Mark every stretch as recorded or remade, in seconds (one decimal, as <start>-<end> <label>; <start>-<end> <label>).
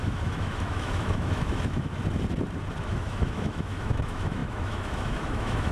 0.0-2.0 remade; 2.0-2.8 recorded; 2.8-5.7 remade